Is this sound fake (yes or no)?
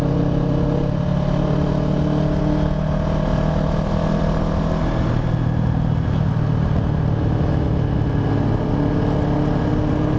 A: no